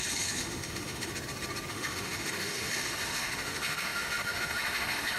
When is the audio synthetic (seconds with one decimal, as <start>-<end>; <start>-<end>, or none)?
0.0-1.1; 1.7-5.2